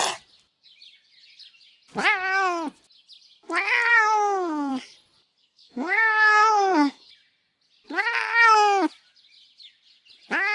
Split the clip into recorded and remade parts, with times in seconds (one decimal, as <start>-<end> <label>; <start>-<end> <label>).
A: 0.0-3.9 recorded; 3.9-4.7 remade; 4.7-5.4 recorded; 5.4-7.1 remade; 7.1-10.5 recorded

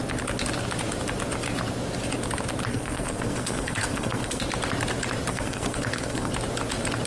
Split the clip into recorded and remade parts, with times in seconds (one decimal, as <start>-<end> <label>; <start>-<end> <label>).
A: 0.0-2.7 recorded; 2.7-4.4 remade; 4.4-5.3 recorded; 5.3-6.3 remade; 6.3-7.1 recorded

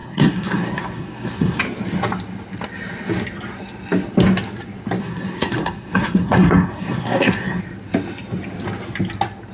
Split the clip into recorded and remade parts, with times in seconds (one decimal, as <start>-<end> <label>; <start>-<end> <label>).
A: 0.0-1.6 remade; 1.6-5.0 recorded; 5.0-7.6 remade; 7.6-9.5 recorded

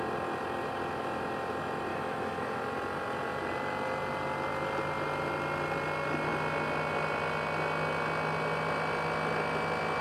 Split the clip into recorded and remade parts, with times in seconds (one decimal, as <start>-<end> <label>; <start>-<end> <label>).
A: 0.0-1.9 recorded; 1.9-2.6 remade; 2.6-10.0 recorded

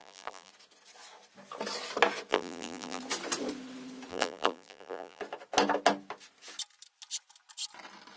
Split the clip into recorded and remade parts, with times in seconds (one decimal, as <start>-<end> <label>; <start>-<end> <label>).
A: 0.0-0.5 remade; 0.5-2.3 recorded; 2.3-3.0 remade; 3.0-4.1 recorded; 4.1-5.2 remade; 5.2-8.2 recorded